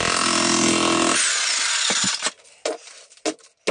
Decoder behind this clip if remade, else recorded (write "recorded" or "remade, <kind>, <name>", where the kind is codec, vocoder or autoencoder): recorded